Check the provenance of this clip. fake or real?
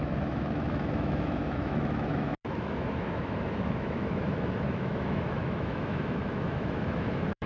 fake